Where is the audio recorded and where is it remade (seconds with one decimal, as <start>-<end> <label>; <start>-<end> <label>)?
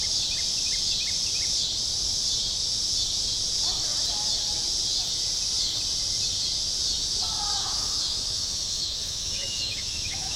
0.0-7.6 recorded; 7.6-10.4 remade